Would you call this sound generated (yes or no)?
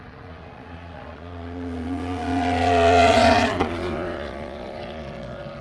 yes